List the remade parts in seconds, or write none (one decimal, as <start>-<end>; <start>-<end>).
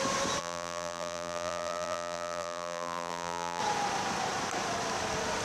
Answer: 0.4-3.6